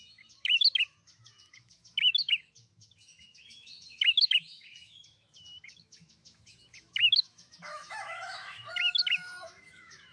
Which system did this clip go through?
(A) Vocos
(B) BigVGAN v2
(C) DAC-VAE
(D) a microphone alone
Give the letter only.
C